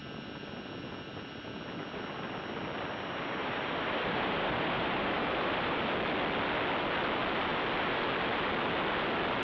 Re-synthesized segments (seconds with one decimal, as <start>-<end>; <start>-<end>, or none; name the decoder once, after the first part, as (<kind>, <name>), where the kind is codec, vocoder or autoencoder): 3.4-5.8 (vocoder, BigVGAN v2)